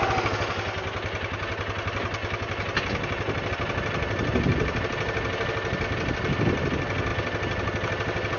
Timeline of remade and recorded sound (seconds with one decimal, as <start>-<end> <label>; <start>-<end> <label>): 0.0-8.4 recorded